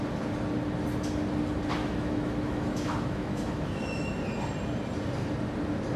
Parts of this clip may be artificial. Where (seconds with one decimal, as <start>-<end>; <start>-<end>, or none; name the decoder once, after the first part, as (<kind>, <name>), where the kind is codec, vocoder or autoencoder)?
1.8-4.1 (autoencoder, DAC-VAE)